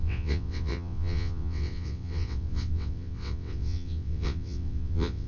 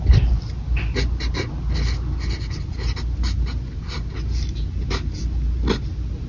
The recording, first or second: second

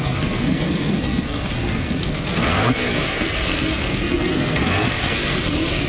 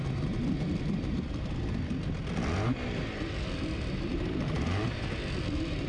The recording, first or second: second